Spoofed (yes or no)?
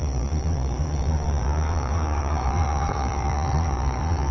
yes